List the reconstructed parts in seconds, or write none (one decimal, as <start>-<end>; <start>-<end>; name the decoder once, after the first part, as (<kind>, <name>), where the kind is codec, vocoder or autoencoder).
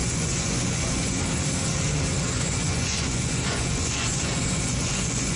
0.0-1.2 (vocoder, Vocos); 2.1-5.4